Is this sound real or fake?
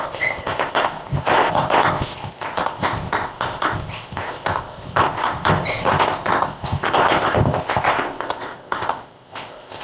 fake